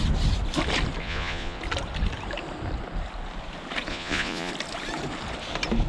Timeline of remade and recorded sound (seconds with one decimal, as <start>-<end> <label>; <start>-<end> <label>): 0.0-1.0 recorded; 1.0-1.6 remade; 1.6-3.9 recorded; 3.9-4.5 remade; 4.5-5.9 recorded